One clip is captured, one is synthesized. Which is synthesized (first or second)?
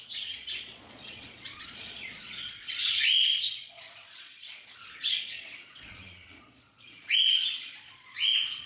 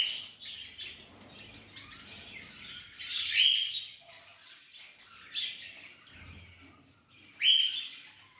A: first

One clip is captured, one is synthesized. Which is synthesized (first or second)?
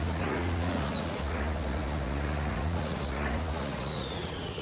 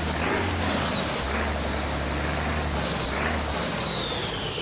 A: first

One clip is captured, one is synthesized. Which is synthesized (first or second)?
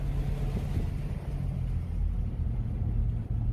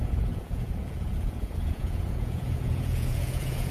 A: second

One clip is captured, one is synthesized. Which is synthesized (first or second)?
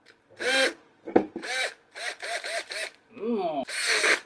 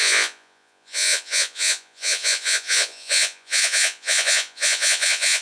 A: second